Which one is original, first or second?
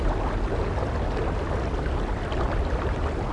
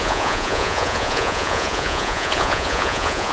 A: first